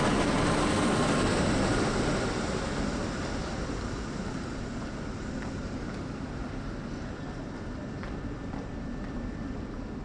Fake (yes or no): no